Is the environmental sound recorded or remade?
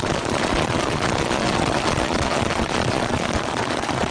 remade